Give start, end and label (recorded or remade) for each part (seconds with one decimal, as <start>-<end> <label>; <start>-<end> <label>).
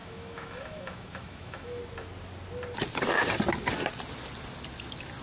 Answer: 0.0-1.8 remade; 1.8-5.2 recorded